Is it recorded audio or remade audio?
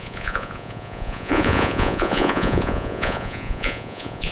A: remade